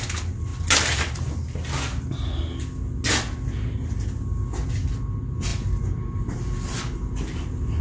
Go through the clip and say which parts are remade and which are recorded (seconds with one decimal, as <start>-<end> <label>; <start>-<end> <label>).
0.0-7.8 recorded

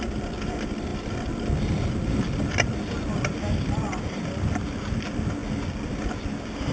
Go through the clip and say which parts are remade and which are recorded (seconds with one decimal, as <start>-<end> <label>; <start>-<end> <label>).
0.0-6.7 recorded

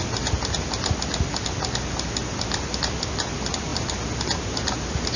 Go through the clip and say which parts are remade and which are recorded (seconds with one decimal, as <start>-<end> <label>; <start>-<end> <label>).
0.0-5.2 recorded

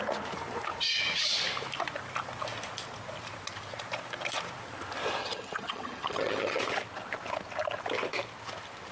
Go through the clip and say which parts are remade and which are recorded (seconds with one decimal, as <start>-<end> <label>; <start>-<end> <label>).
0.0-5.2 recorded; 5.2-6.6 remade; 6.6-8.9 recorded

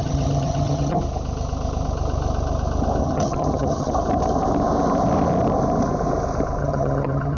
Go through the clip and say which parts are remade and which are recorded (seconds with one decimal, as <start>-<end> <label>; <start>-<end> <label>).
0.0-1.0 remade; 1.0-3.0 recorded; 3.0-3.9 remade; 3.9-6.6 recorded; 6.6-7.4 remade